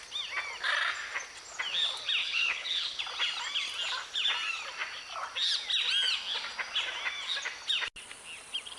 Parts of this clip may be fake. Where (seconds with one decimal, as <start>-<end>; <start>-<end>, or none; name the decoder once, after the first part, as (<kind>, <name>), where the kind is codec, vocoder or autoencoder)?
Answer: 2.2-3.0 (codec, HILCodec)